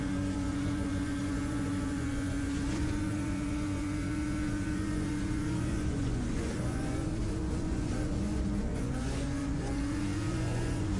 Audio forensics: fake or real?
fake